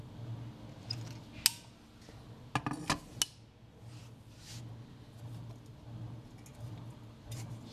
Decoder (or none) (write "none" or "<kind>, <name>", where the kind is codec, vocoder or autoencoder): none